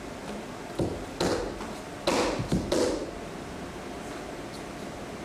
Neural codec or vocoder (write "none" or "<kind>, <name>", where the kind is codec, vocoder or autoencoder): none